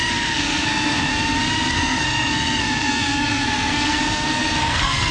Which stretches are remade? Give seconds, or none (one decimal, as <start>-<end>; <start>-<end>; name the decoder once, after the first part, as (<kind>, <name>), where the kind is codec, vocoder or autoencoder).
0.0-1.1 (codec, SNAC); 1.7-5.1

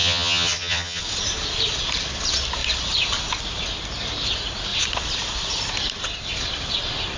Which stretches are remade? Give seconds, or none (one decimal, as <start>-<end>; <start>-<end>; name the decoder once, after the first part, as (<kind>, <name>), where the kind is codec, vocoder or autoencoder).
0.0-1.0 (vocoder, HiFi-GAN)

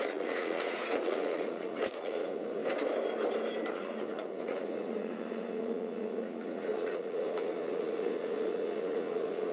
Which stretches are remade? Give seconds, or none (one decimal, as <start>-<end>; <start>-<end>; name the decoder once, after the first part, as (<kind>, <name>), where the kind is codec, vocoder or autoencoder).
0.0-2.6 (vocoder, Vocos); 3.7-9.5